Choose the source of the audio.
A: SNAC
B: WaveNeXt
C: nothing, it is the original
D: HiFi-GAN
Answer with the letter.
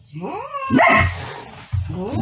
C